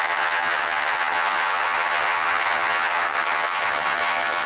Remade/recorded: remade